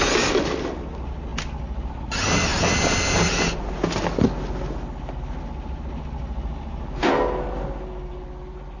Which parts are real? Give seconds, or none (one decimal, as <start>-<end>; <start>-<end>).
0.0-8.8